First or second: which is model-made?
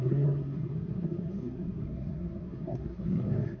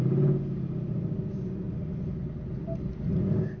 first